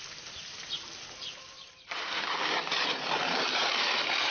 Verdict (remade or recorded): remade